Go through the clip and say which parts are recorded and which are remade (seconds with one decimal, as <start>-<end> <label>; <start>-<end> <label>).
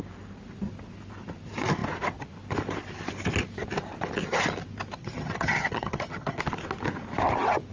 0.0-5.0 recorded; 5.0-6.4 remade; 6.4-7.7 recorded